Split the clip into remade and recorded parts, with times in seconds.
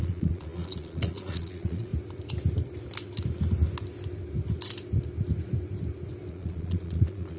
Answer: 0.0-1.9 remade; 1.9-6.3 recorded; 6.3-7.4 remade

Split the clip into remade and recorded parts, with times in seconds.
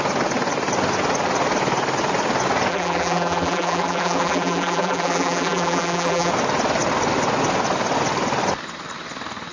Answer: 0.0-2.7 recorded; 2.7-6.3 remade; 6.3-9.5 recorded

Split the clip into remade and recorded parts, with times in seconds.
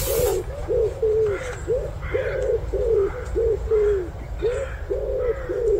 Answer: 0.0-5.8 recorded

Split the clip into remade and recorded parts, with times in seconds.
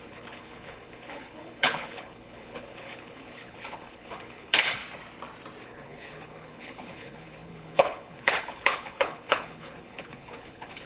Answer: 0.0-4.8 remade; 4.8-5.6 recorded; 5.6-10.9 remade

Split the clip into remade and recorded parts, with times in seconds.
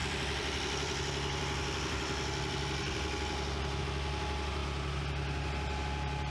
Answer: 0.0-3.8 remade; 3.8-6.3 recorded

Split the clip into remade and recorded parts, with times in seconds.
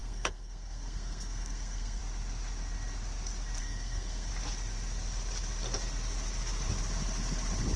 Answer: 0.0-2.0 remade; 2.0-3.6 recorded; 3.6-4.3 remade; 4.3-7.8 recorded